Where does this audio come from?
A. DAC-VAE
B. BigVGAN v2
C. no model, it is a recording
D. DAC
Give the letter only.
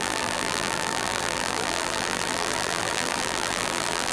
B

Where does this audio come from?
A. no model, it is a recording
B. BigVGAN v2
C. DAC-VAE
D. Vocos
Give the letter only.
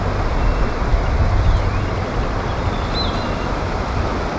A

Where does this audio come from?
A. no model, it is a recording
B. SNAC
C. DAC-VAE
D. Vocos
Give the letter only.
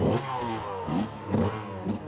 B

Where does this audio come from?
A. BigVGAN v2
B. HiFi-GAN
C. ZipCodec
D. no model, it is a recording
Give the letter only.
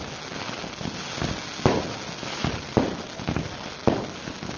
D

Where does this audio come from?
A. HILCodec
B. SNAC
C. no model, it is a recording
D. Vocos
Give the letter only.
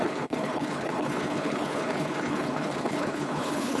A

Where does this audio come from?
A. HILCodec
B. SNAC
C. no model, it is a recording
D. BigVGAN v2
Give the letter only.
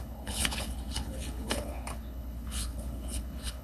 A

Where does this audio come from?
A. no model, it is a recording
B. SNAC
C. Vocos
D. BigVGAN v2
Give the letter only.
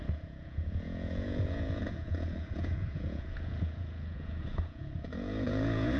C